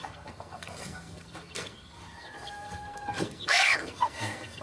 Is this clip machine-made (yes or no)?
yes